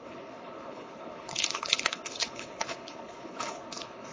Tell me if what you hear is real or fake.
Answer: fake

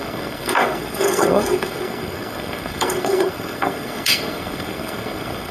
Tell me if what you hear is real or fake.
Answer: fake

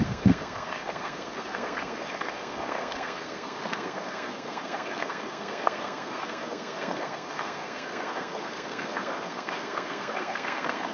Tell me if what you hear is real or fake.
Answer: fake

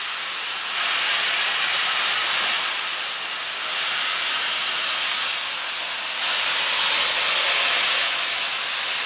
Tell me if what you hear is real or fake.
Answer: real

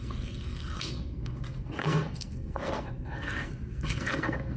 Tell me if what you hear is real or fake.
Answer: fake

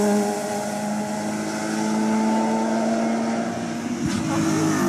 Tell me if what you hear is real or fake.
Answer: real